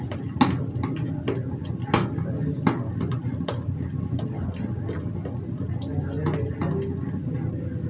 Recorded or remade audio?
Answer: recorded